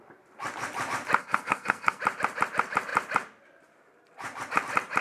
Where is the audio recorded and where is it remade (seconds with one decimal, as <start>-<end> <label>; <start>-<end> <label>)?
0.0-1.2 recorded; 1.2-2.0 remade; 2.0-5.0 recorded